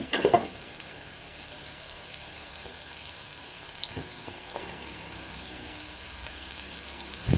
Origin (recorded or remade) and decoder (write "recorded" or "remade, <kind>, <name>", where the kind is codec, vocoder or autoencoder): remade, codec, SNAC